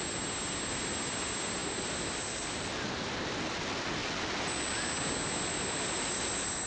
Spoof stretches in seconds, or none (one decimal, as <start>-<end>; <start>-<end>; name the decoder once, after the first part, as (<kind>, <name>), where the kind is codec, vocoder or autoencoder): none